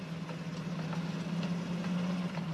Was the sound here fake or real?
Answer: real